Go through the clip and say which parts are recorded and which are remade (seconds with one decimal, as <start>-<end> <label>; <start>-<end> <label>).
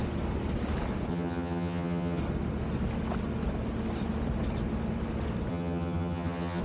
0.0-1.1 recorded; 1.1-2.2 remade; 2.2-5.5 recorded; 5.5-6.6 remade